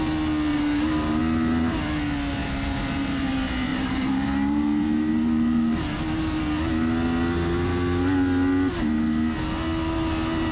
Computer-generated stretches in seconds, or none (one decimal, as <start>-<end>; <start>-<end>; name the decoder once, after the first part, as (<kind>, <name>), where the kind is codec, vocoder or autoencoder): 0.5-1.2 (vocoder, BigVGAN v2); 2.4-3.2; 3.7-6.4